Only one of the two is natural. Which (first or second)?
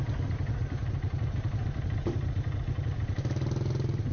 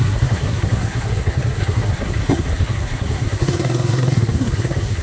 first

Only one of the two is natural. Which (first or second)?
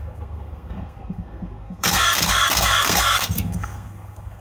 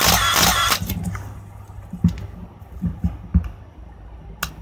second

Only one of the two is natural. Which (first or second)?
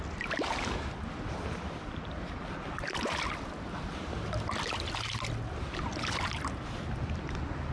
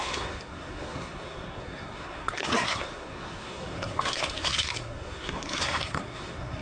first